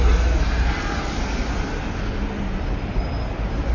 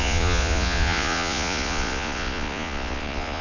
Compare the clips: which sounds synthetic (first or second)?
second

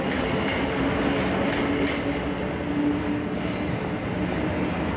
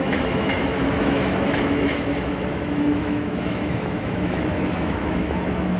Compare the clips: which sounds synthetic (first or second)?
second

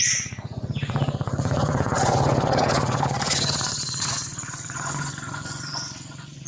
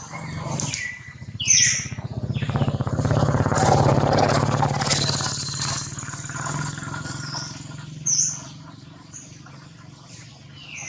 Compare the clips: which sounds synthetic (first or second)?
first